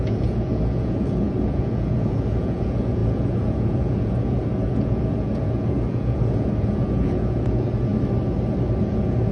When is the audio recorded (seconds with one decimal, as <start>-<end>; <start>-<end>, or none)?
7.9-8.8